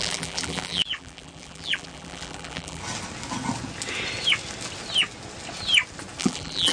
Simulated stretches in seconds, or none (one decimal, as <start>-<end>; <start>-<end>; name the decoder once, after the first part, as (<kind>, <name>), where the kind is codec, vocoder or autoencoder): 0.0-2.8 (vocoder, BigVGAN v2); 6.2-6.7